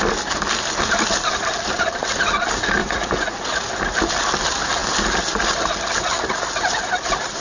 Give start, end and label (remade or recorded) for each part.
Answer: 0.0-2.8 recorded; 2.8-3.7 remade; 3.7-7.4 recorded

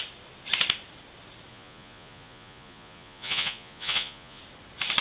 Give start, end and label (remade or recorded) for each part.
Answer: 0.0-1.5 recorded; 1.5-4.4 remade; 4.4-5.0 recorded

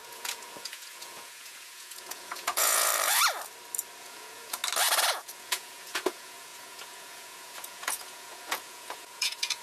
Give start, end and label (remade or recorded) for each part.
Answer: 0.0-2.9 remade; 2.9-4.0 recorded; 4.0-4.6 remade; 4.6-5.1 recorded; 5.1-9.6 remade

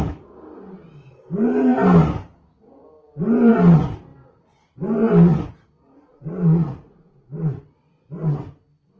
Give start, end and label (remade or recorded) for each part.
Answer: 0.0-6.1 recorded; 6.1-7.6 remade; 7.6-9.0 recorded

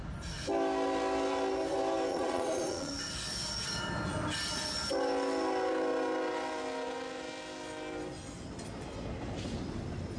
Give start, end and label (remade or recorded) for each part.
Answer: 0.0-2.1 recorded; 2.1-2.9 remade; 2.9-10.2 recorded

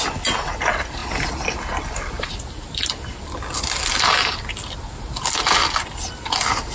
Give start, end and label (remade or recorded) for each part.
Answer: 0.0-6.7 recorded

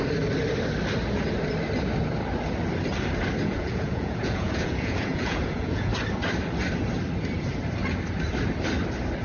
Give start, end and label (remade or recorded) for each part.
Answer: 0.0-3.4 recorded; 3.4-5.9 remade; 5.9-9.2 recorded